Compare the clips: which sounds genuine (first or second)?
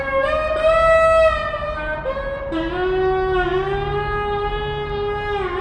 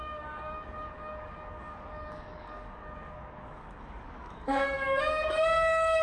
first